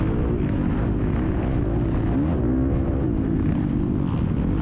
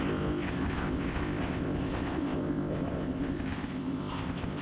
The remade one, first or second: second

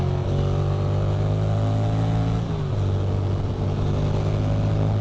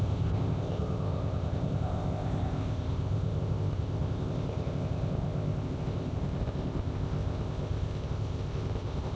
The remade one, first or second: second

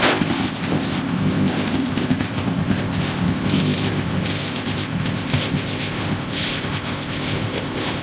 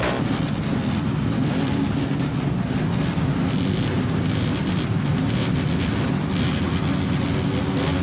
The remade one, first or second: first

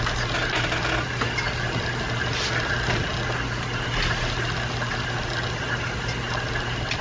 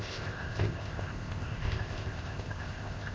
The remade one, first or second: second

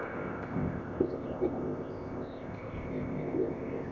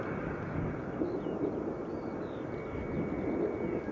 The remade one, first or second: first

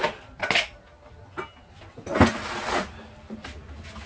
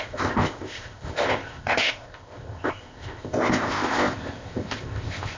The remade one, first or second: second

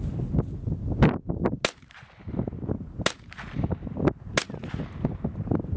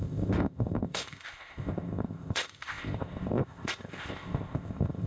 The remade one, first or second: second